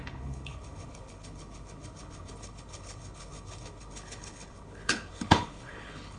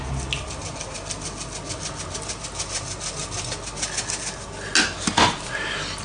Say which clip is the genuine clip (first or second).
second